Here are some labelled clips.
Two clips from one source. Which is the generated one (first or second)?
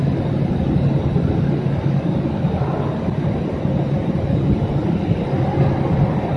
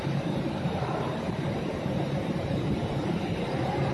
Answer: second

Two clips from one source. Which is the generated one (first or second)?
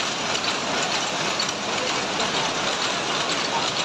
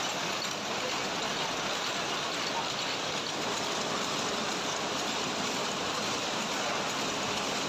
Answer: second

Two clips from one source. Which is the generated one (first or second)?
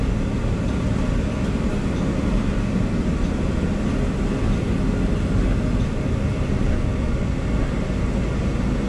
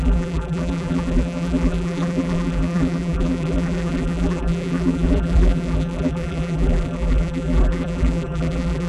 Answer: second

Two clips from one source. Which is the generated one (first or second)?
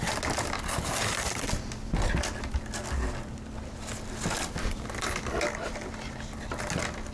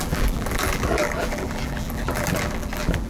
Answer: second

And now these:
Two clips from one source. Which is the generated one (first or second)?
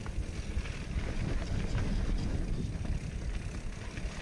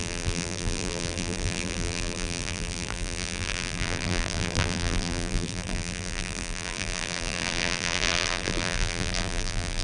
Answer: second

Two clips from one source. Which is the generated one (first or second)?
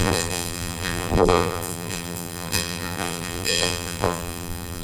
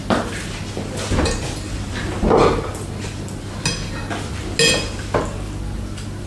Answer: first